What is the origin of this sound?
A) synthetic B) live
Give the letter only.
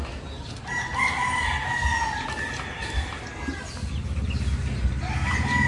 B